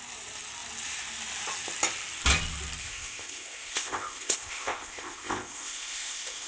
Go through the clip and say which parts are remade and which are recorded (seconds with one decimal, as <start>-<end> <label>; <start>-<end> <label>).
0.0-2.8 recorded; 2.8-6.5 remade